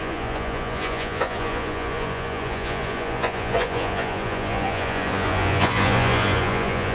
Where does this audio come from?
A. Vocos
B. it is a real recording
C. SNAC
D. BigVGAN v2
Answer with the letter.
A